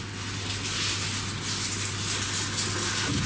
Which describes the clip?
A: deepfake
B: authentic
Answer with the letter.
B